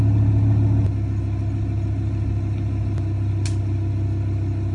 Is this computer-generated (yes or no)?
no